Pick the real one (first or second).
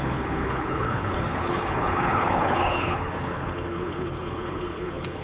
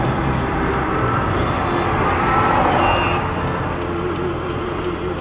second